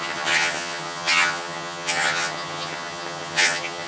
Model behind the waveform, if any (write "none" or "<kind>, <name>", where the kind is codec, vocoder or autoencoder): vocoder, HiFi-GAN